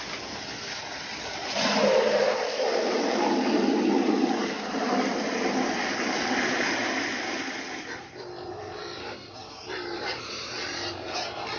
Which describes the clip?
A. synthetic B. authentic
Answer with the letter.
B